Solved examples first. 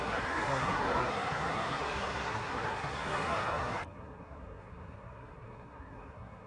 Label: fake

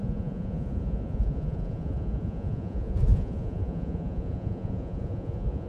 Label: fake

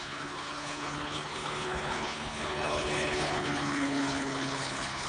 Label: fake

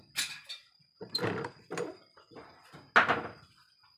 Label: real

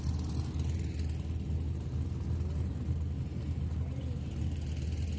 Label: real